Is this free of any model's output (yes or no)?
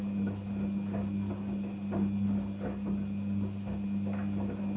yes